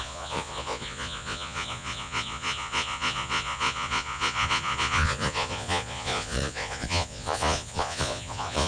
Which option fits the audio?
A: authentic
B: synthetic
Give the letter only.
B